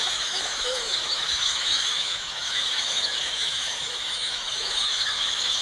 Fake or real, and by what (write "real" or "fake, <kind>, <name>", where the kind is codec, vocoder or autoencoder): fake, autoencoder, DAC-VAE